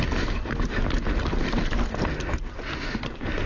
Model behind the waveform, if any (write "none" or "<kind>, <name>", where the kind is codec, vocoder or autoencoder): none